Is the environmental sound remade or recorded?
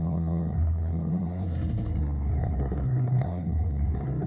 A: remade